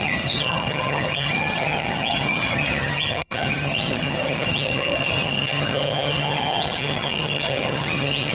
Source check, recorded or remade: remade